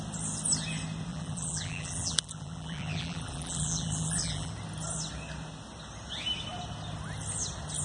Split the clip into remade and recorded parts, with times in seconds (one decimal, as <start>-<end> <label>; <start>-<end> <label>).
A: 0.0-1.1 recorded; 1.1-4.5 remade; 4.5-7.8 recorded